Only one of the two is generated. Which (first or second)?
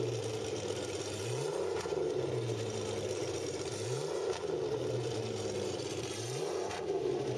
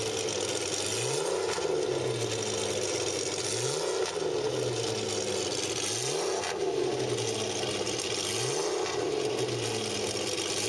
first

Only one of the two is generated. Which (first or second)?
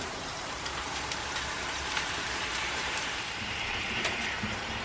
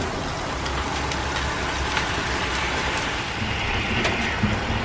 first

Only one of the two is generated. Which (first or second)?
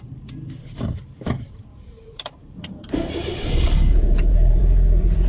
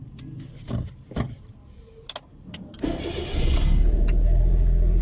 first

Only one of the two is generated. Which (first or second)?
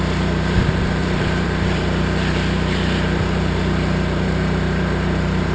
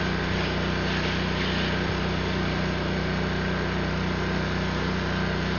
first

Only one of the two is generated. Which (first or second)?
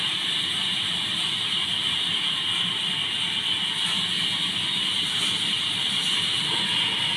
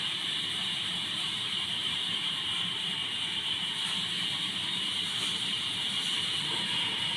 second